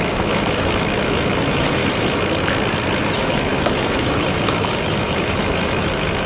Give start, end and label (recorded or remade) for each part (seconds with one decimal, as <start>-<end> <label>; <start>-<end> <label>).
0.0-1.8 remade; 1.8-3.0 recorded; 3.0-6.3 remade